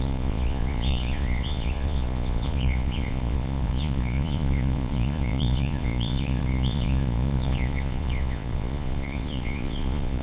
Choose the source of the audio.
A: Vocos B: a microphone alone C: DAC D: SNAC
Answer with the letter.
A